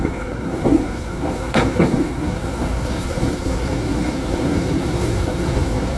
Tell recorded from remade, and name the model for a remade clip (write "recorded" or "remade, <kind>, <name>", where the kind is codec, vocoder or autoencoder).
remade, codec, SNAC